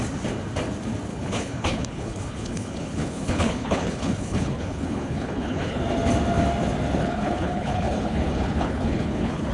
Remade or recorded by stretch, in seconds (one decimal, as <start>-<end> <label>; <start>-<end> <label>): 0.0-1.1 recorded; 1.1-5.8 remade; 5.8-7.0 recorded; 7.0-9.5 remade